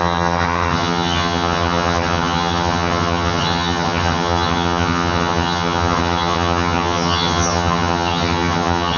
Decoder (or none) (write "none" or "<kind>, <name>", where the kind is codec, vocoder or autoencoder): vocoder, HiFi-GAN